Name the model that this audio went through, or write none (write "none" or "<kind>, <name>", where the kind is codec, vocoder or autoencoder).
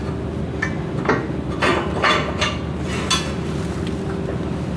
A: none